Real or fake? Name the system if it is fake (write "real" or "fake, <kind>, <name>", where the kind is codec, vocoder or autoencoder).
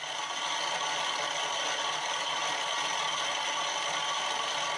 real